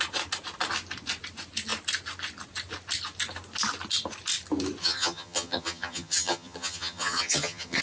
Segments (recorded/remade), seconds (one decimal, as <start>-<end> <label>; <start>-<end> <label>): 0.0-4.8 recorded; 4.8-7.8 remade